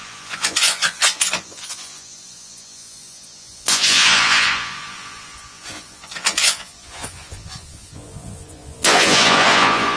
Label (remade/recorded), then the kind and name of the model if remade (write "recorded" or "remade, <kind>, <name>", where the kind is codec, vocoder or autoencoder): remade, vocoder, Vocos